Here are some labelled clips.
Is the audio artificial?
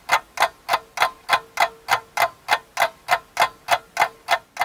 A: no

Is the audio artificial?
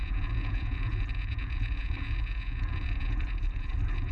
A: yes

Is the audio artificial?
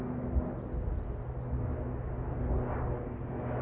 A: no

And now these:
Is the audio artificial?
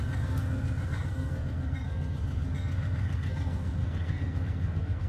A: yes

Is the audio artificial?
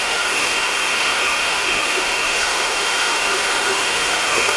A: yes